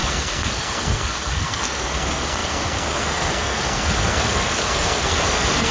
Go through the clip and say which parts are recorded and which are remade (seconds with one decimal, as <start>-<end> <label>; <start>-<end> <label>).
0.0-5.7 remade